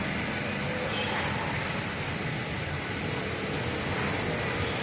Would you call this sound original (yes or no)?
yes